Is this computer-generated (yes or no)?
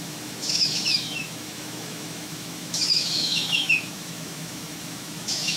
yes